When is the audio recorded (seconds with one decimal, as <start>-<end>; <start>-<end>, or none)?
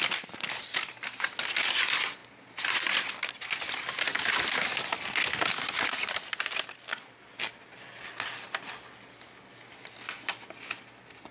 0.0-11.3